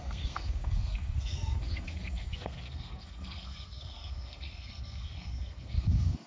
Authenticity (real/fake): fake